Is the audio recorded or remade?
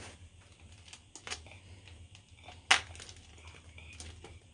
recorded